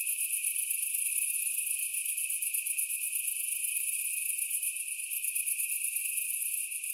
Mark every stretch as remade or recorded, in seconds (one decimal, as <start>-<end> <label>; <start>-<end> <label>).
0.0-6.9 recorded